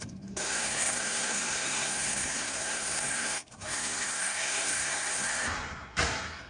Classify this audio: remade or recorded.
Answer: remade